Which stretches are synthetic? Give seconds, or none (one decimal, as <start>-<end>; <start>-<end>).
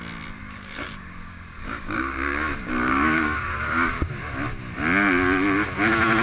0.4-4.1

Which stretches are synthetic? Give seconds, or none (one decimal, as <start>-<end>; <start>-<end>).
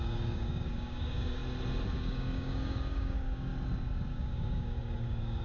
0.0-1.4; 2.0-3.5; 4.1-5.4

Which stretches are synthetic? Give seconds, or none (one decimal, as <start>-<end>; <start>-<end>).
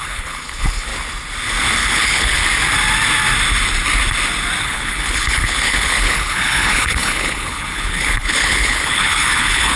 0.0-0.9; 1.9-2.4; 4.6-9.8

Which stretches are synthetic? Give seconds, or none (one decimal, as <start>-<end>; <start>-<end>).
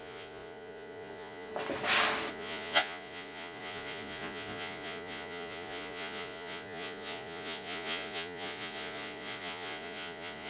0.0-1.5; 2.3-10.5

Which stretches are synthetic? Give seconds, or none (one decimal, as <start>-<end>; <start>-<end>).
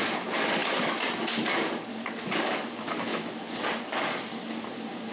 1.9-3.7; 4.3-5.1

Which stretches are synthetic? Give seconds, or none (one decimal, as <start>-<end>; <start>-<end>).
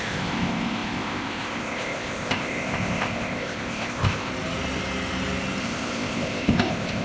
0.0-4.3; 5.6-7.0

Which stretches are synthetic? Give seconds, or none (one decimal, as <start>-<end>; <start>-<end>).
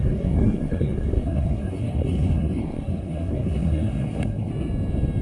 0.0-4.5